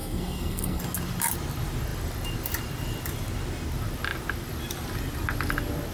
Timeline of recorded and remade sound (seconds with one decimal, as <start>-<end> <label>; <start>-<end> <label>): 0.0-0.8 remade; 0.8-5.9 recorded